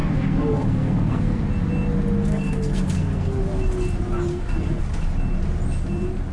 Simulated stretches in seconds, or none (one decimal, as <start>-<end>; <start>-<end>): 0.0-1.4; 2.3-3.4; 4.3-4.8